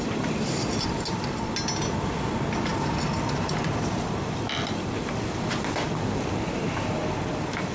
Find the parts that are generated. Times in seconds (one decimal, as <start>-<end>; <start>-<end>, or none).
none